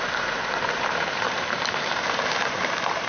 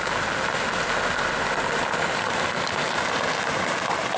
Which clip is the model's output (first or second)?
first